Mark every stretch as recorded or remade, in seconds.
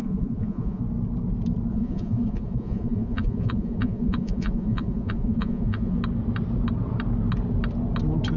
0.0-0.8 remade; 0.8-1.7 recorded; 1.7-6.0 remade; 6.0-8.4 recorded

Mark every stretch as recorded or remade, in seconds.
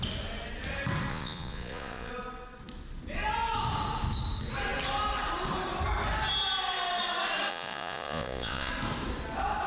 0.0-1.1 recorded; 1.1-2.1 remade; 2.1-7.5 recorded; 7.5-8.7 remade; 8.7-9.7 recorded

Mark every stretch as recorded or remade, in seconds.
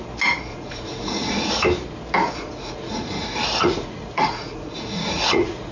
0.0-0.5 recorded; 0.5-1.5 remade; 1.5-2.2 recorded; 2.2-5.7 remade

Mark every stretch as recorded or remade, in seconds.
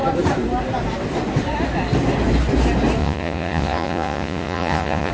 0.0-3.0 recorded; 3.0-5.1 remade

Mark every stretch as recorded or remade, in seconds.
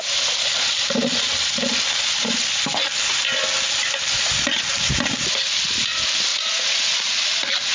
0.0-6.3 recorded; 6.3-7.0 remade; 7.0-7.7 recorded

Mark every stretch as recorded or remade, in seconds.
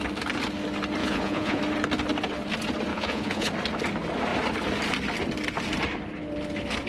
0.0-1.0 recorded; 1.0-1.6 remade; 1.6-2.9 recorded; 2.9-3.5 remade; 3.5-6.9 recorded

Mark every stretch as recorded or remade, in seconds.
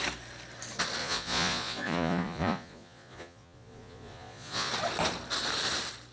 0.0-1.0 recorded; 1.0-4.7 remade; 4.7-6.1 recorded